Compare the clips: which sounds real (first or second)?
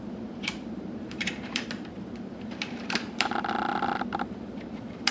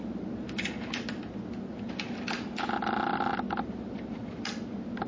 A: second